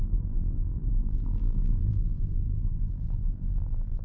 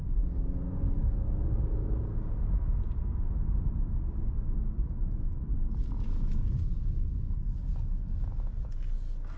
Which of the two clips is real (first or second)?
second